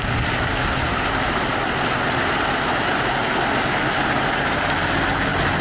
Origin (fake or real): real